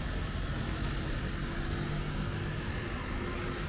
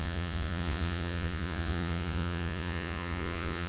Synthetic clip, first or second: second